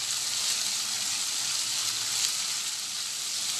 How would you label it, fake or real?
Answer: real